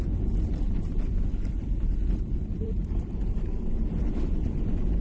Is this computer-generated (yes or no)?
yes